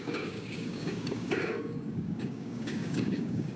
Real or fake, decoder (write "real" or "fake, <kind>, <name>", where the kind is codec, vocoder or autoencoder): fake, codec, DAC